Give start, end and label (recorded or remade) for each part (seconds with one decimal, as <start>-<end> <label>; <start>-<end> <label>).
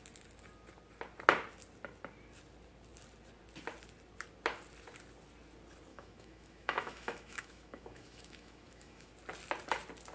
0.0-5.9 recorded; 5.9-9.1 remade; 9.1-10.1 recorded